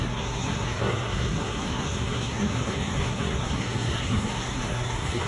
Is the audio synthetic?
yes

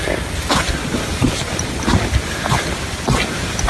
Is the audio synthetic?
no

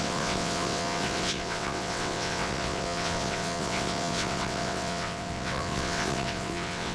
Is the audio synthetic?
yes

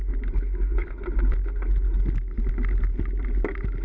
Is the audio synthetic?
no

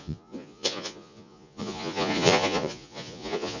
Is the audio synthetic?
yes